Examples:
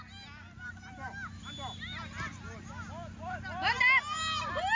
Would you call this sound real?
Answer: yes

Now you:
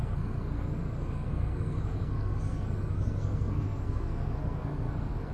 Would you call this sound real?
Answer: no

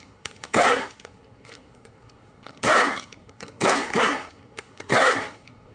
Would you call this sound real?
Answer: no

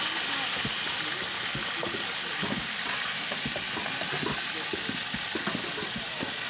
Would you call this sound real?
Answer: yes